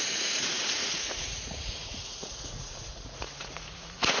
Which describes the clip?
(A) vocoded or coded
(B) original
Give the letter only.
A